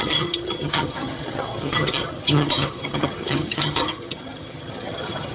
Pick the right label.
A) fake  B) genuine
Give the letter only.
A